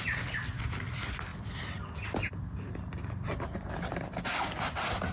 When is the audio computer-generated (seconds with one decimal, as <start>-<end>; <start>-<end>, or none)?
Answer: none